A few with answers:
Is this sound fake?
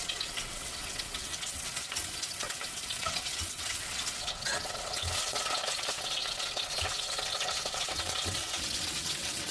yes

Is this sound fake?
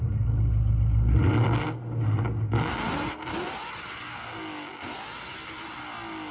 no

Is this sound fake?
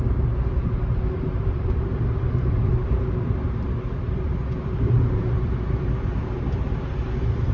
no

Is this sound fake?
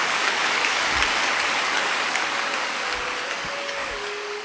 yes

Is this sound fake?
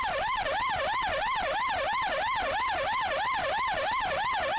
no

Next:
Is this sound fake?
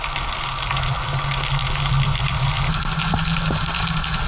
no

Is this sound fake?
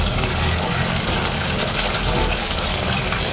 yes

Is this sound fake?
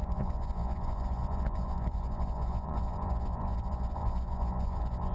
yes